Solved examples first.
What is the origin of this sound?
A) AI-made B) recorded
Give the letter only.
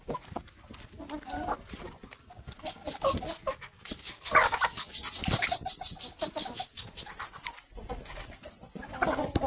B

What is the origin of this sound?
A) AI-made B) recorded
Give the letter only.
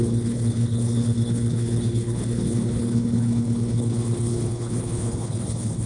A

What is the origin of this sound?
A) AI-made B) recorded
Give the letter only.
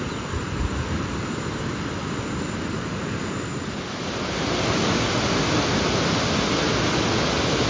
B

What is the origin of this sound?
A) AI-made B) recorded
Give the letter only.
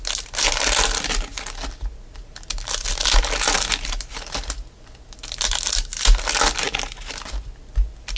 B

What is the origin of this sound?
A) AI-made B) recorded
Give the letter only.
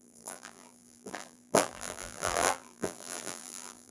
A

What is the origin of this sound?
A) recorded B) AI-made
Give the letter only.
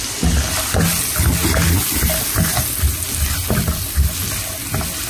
A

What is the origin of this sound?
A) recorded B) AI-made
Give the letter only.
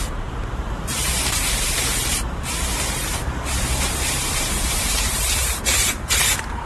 B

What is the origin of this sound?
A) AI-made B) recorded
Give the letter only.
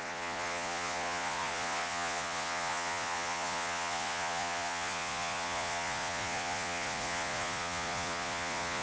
A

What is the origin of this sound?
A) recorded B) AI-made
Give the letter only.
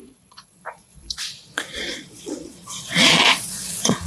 B